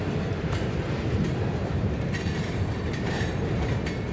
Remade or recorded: remade